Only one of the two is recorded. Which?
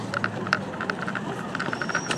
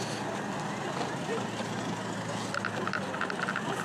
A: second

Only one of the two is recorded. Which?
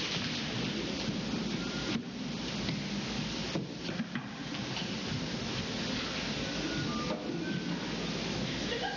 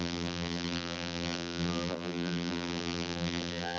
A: first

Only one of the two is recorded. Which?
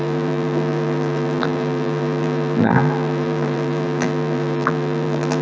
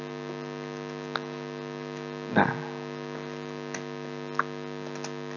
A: second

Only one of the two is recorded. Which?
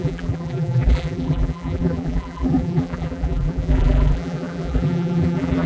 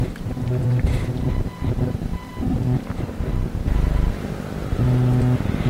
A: second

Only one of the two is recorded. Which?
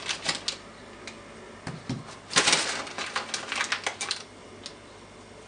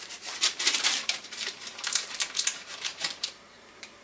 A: first